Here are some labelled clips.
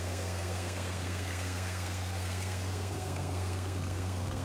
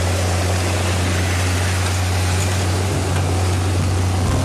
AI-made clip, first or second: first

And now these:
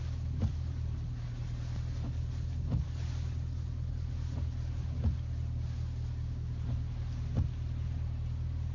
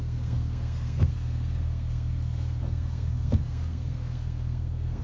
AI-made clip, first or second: second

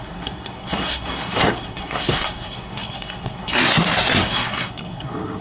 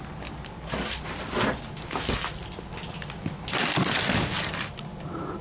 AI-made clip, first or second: first